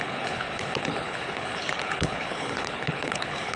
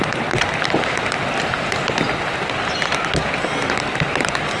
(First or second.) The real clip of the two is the second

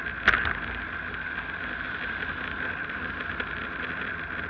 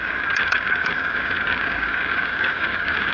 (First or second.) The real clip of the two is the first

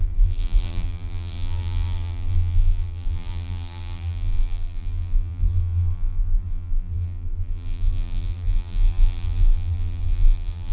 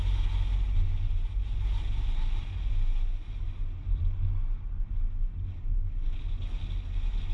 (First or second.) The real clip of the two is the second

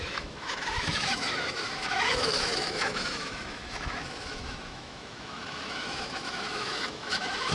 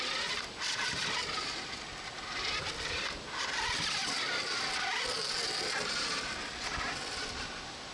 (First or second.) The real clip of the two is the second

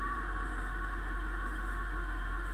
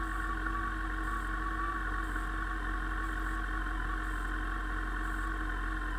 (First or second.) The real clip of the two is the second